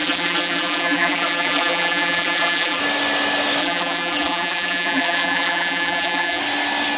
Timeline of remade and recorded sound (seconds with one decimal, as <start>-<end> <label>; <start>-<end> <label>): 0.0-2.8 remade; 2.8-3.6 recorded; 3.6-6.4 remade; 6.4-7.0 recorded